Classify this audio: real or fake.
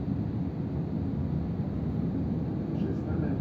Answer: real